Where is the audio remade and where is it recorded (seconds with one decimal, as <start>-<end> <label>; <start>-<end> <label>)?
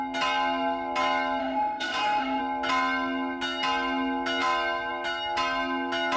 0.0-1.4 recorded; 1.4-2.4 remade; 2.4-6.2 recorded